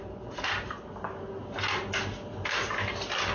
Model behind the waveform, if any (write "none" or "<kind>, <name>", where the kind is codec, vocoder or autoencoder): none